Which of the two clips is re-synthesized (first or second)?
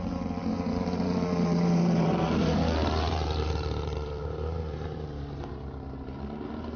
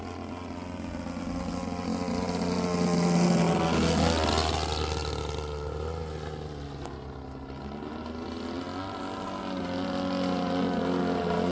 first